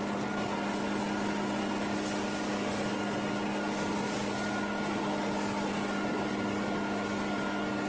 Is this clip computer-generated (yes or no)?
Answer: no